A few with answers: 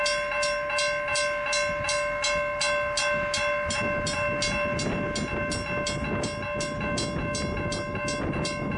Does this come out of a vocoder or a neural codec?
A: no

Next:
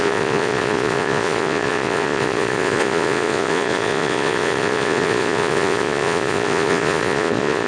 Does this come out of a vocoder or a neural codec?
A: yes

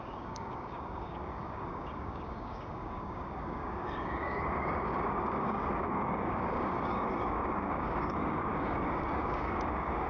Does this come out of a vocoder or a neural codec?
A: yes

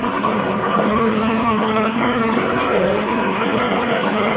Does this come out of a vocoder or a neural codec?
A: yes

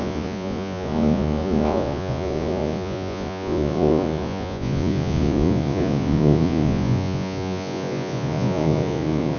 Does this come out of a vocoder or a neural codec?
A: yes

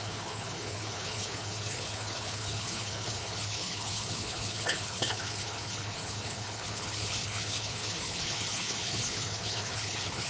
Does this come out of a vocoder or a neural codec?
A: yes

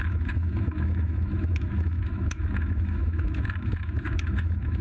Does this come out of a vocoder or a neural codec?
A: yes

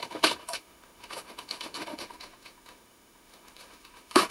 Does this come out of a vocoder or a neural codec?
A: yes